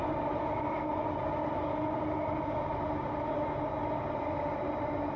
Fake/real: real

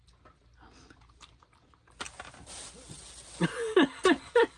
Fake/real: real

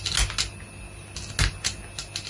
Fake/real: real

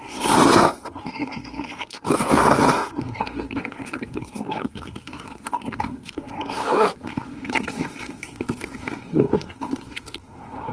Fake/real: fake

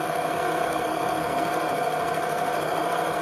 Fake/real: fake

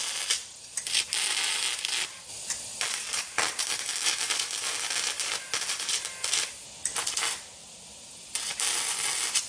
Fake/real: real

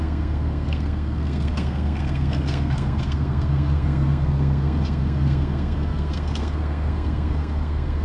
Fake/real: fake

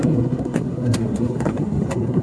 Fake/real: fake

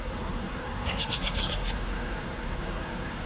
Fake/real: fake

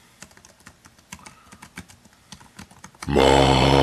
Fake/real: real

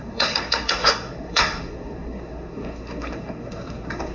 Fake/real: fake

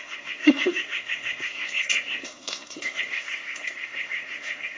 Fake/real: fake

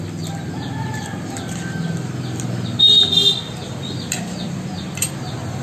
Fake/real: real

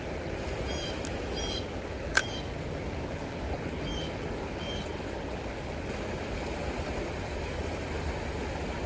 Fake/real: real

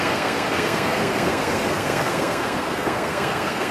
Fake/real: fake